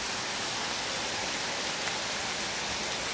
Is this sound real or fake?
real